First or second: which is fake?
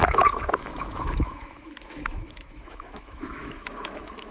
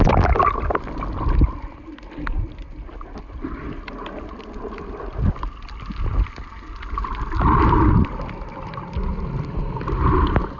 first